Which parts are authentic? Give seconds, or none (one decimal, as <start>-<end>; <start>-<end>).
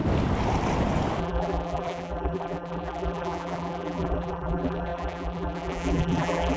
0.0-1.2